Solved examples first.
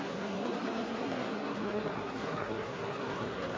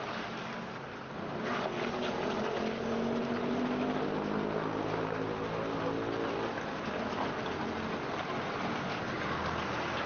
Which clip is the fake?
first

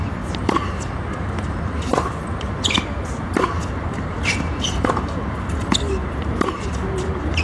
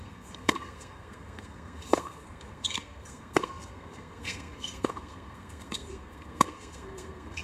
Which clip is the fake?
second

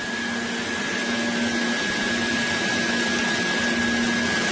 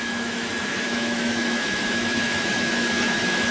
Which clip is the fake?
second